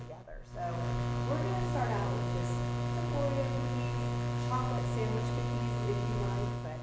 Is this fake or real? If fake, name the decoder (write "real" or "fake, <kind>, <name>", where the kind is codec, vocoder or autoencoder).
real